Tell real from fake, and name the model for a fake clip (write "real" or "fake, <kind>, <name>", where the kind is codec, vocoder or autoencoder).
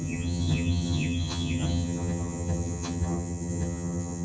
fake, vocoder, HiFi-GAN